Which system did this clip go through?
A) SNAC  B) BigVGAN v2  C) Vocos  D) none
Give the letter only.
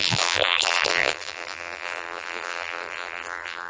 B